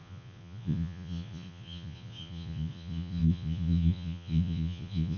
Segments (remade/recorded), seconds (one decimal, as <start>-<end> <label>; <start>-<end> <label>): 0.0-5.2 remade